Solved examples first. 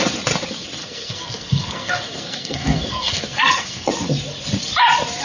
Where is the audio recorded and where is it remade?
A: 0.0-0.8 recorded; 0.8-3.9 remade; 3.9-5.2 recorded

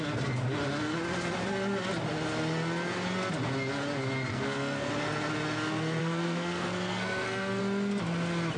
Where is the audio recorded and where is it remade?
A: 0.0-4.3 recorded; 4.3-4.9 remade; 4.9-6.0 recorded; 6.0-7.6 remade; 7.6-8.6 recorded

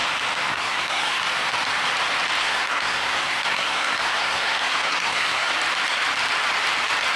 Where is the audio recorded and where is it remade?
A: 0.0-0.5 recorded; 0.5-1.2 remade; 1.2-2.4 recorded; 2.4-5.5 remade; 5.5-7.2 recorded